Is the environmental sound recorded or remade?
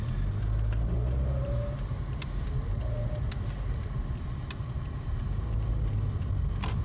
recorded